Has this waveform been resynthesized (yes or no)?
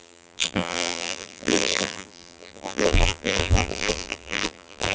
yes